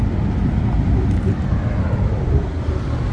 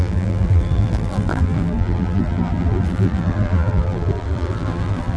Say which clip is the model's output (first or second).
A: second